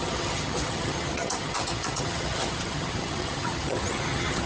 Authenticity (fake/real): fake